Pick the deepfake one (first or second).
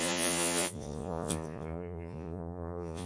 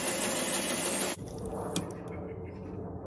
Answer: first